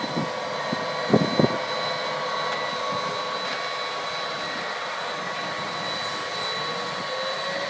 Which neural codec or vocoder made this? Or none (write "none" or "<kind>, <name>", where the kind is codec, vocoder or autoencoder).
none